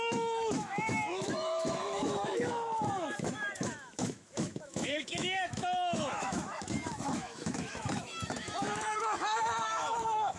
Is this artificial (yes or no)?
yes